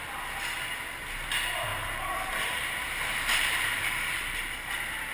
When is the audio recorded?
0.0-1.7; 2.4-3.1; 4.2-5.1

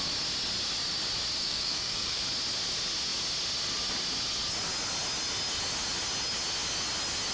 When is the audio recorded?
0.0-1.4; 2.2-7.3

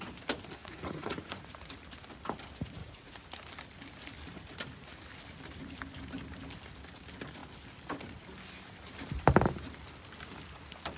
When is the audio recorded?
0.0-0.6; 1.7-2.8; 3.4-11.0

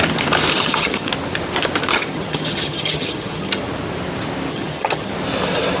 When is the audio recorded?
0.0-0.5; 1.1-1.9; 3.6-4.5; 5.1-5.8

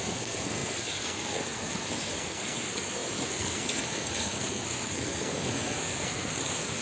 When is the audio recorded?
none